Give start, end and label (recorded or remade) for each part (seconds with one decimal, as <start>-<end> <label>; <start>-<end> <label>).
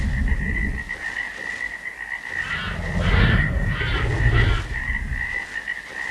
0.0-3.1 recorded; 3.1-3.8 remade; 3.8-6.1 recorded